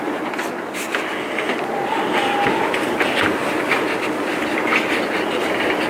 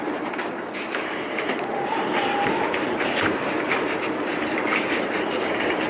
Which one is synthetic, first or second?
second